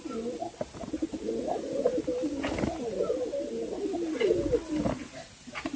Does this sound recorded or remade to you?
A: recorded